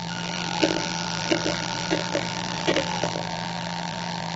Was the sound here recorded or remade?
remade